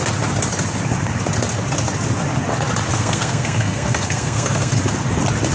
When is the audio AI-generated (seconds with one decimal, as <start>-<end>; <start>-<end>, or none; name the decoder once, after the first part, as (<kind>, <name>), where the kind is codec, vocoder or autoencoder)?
2.9-4.7 (codec, SNAC)